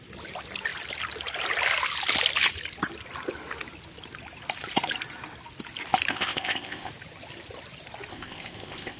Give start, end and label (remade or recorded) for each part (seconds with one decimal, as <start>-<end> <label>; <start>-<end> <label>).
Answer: 0.0-6.1 recorded; 6.1-6.9 remade; 6.9-8.1 recorded; 8.1-9.0 remade